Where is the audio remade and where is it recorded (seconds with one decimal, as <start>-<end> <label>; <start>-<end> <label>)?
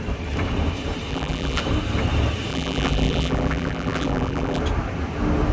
0.0-1.1 recorded; 1.1-1.6 remade; 1.6-2.5 recorded; 2.5-4.6 remade; 4.6-5.5 recorded